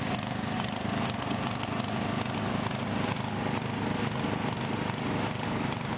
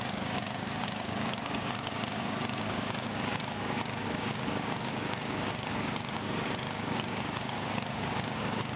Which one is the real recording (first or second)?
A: first